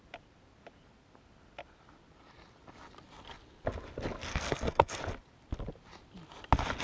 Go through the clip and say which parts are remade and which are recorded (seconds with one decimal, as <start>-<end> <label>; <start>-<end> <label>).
0.0-4.3 recorded; 4.3-5.0 remade; 5.0-6.8 recorded

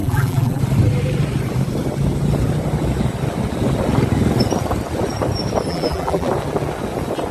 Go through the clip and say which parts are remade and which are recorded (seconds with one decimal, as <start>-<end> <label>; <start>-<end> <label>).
0.0-0.6 remade; 0.6-5.7 recorded; 5.7-6.3 remade; 6.3-7.3 recorded